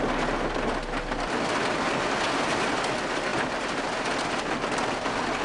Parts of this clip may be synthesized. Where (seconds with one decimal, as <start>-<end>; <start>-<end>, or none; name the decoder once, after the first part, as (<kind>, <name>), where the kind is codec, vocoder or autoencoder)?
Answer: none